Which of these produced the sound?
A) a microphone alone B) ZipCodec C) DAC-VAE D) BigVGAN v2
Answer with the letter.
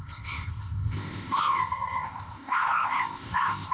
B